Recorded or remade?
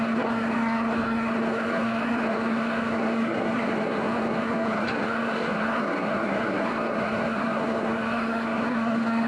remade